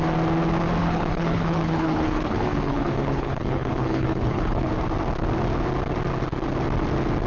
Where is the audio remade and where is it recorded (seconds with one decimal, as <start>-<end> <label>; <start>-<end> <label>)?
0.0-0.8 recorded; 0.8-4.7 remade; 4.7-7.3 recorded